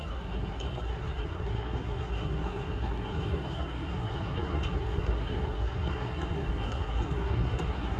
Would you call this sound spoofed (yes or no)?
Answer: yes